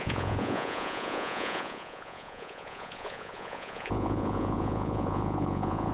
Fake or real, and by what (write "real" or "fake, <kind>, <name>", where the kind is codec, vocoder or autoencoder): fake, vocoder, Vocos